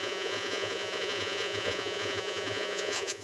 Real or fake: fake